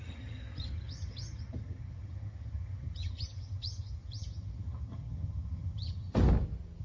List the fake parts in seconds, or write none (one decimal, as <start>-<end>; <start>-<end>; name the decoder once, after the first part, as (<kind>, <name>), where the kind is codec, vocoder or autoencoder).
0.0-6.1 (vocoder, HiFi-GAN)